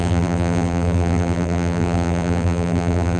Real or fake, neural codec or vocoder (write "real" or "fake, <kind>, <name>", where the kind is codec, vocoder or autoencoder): fake, vocoder, BigVGAN v2